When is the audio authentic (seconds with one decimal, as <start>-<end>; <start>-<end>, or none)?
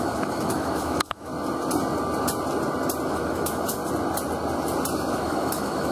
1.3-3.1; 3.8-5.1